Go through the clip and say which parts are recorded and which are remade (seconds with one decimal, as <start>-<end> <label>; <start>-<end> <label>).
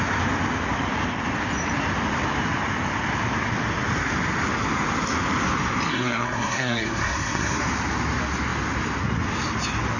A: 0.0-5.9 recorded; 5.9-7.6 remade; 7.6-10.0 recorded